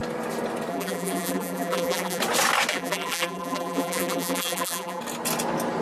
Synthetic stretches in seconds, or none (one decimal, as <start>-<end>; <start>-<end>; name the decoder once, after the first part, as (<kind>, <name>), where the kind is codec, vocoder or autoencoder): 0.7-2.2 (vocoder, BigVGAN v2); 2.7-5.0